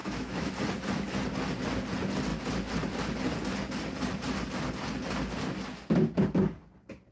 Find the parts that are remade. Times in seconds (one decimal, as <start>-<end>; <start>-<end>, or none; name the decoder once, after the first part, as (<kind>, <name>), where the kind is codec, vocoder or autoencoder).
0.0-0.5 (autoencoder, DAC-VAE)